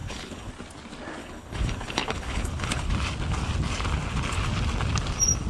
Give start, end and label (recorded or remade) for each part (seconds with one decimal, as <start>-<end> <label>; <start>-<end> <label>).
0.0-0.5 remade; 0.5-1.2 recorded; 1.2-2.9 remade; 2.9-5.5 recorded